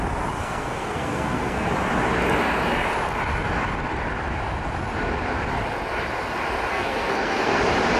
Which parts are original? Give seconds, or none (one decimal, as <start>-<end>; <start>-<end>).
0.0-0.4; 1.7-6.7; 7.6-8.0